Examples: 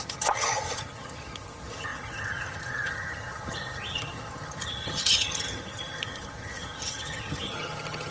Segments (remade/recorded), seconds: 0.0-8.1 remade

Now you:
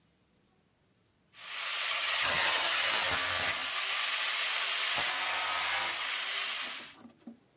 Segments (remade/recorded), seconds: 0.0-1.9 recorded; 1.9-2.9 remade; 2.9-7.6 recorded

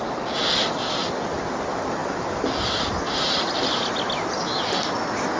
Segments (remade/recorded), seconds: 0.0-5.4 recorded